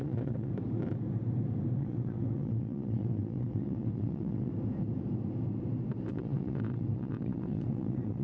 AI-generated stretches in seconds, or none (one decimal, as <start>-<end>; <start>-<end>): 0.0-0.5; 1.8-4.5; 6.1-8.2